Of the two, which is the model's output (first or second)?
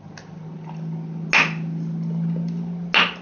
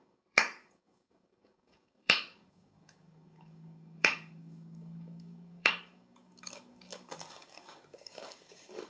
second